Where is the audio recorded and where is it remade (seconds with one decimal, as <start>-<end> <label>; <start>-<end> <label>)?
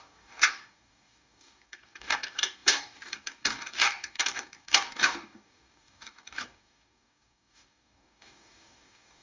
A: 0.0-9.2 remade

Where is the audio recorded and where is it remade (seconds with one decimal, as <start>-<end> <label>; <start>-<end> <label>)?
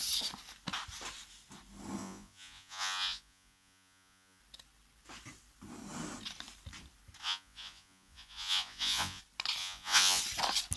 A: 0.0-2.0 recorded; 2.0-4.4 remade; 4.4-7.2 recorded; 7.2-9.2 remade; 9.2-9.6 recorded; 9.6-10.2 remade; 10.2-10.8 recorded